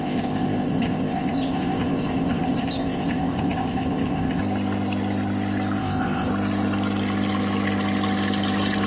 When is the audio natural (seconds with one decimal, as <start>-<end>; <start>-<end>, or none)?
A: 4.4-5.8; 6.3-8.9